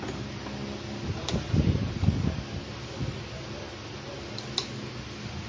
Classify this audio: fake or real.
real